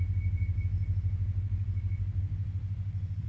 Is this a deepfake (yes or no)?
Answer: no